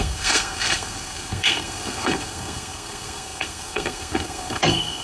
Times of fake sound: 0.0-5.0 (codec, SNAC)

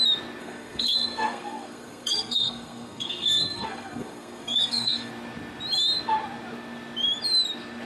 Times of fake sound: 0.4-5.1 (codec, SNAC)

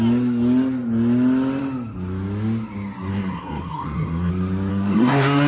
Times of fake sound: 3.1-4.3 (codec, SNAC); 4.7-5.5

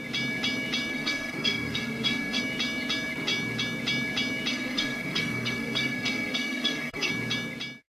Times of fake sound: 0.9-2.4 (codec, SNAC); 4.5-7.1

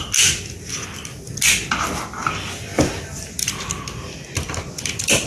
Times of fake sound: none

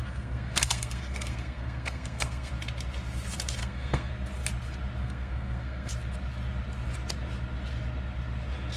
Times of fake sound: 0.0-2.5 (codec, SNAC); 3.6-4.1; 5.0-5.9

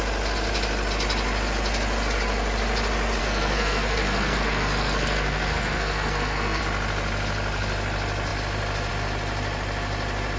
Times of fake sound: 3.2-6.6 (codec, SNAC)